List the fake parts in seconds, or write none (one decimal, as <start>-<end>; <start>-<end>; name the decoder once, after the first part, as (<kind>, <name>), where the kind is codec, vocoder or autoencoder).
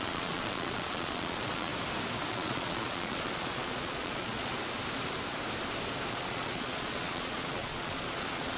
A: 0.0-1.7 (vocoder, Vocos); 2.3-4.5; 6.1-8.6